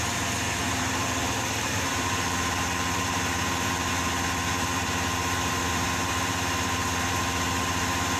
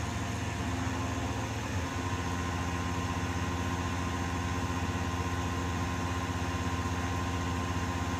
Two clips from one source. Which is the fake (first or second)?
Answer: first